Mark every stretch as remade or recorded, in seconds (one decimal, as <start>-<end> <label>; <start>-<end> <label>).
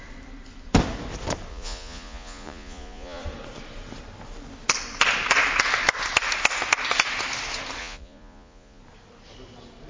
0.0-1.5 recorded; 1.5-3.2 remade; 3.2-7.8 recorded; 7.8-8.8 remade; 8.8-9.9 recorded